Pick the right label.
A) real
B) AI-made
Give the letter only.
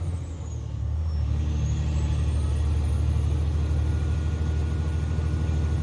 A